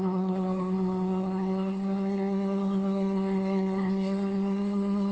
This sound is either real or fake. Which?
fake